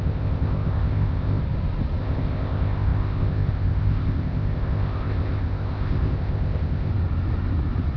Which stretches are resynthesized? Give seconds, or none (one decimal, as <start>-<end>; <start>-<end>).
0.0-1.4; 2.0-6.9